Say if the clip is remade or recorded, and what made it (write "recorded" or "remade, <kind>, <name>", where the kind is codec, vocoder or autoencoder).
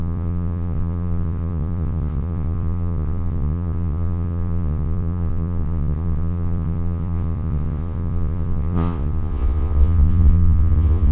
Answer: remade, vocoder, Vocos